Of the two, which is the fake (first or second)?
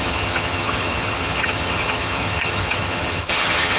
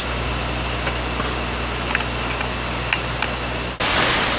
first